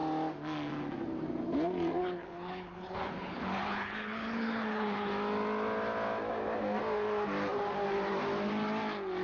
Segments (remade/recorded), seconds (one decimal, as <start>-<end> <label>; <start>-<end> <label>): 0.0-2.0 recorded; 2.0-5.1 remade; 5.1-9.2 recorded